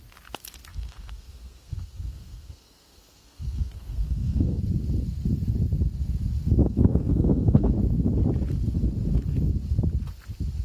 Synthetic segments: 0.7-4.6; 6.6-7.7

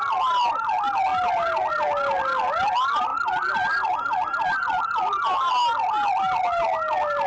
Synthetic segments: none

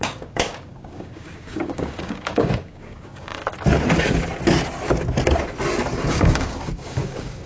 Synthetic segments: 0.0-3.4; 6.1-7.5

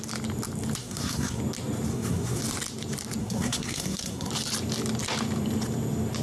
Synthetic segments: 0.8-1.4; 1.9-2.4; 3.2-4.3

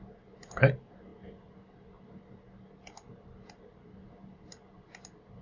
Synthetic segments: none

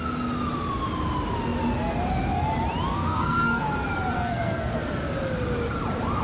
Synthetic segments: 2.9-3.6; 4.1-4.8